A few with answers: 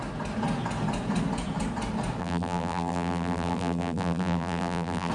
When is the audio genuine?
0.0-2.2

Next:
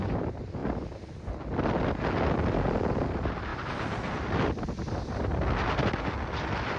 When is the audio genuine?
0.0-6.8

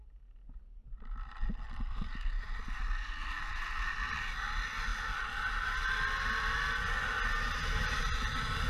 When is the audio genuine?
0.0-0.8; 2.1-8.7

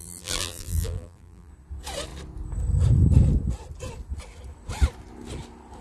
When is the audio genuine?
1.5-5.8